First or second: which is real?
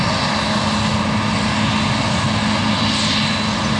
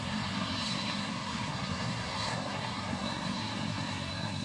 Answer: first